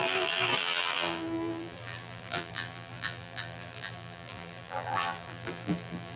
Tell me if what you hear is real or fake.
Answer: fake